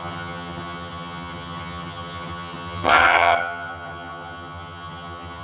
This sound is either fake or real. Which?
fake